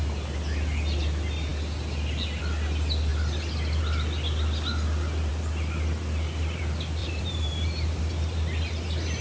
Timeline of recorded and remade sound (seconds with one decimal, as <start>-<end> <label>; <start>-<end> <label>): 0.0-7.0 recorded; 7.0-8.0 remade; 8.0-9.2 recorded